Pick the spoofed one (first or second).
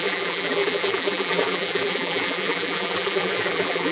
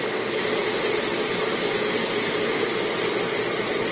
first